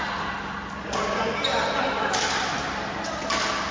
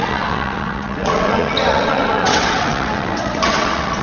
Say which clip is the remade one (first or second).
second